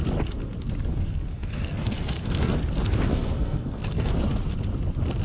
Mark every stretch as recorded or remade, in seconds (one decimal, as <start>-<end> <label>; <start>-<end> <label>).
0.0-0.9 recorded; 0.9-2.5 remade; 2.5-3.1 recorded; 3.1-4.1 remade; 4.1-5.2 recorded

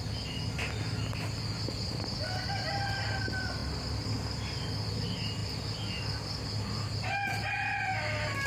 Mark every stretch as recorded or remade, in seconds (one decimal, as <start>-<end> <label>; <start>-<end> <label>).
0.0-8.5 recorded

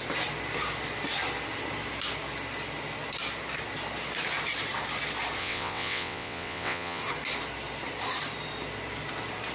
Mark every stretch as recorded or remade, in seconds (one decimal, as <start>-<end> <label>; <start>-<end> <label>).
0.0-5.4 recorded; 5.4-7.0 remade; 7.0-9.5 recorded

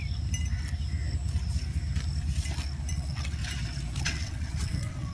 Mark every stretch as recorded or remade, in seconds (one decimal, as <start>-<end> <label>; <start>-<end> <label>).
0.0-2.9 recorded; 2.9-3.4 remade; 3.4-4.0 recorded; 4.0-5.1 remade

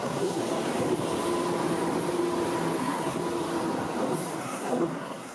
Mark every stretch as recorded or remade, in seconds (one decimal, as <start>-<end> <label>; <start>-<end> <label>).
0.0-0.4 remade; 0.4-2.8 recorded; 2.8-3.2 remade; 3.2-4.4 recorded; 4.4-5.3 remade